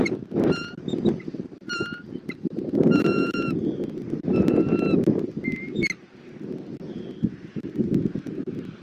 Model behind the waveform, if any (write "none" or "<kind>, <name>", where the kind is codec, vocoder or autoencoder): none